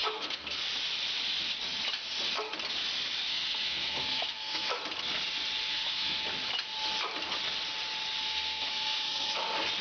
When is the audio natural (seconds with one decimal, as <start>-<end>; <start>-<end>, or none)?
0.6-3.3; 4.7-5.7; 6.2-8.2; 9.3-9.8